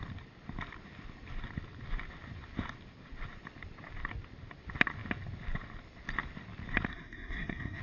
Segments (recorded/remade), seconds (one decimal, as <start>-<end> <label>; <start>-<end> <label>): 0.0-6.9 recorded; 6.9-7.8 remade